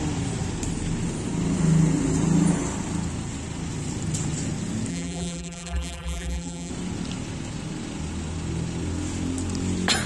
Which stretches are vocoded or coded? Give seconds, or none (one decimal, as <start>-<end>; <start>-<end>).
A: 4.9-6.7